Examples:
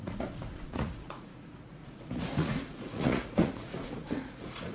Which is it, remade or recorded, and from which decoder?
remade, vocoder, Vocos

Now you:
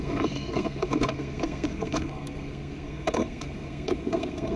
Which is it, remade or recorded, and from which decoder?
remade, codec, SNAC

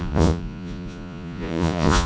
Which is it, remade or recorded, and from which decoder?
remade, vocoder, Vocos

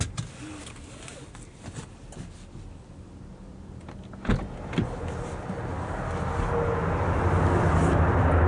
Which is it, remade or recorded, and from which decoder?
recorded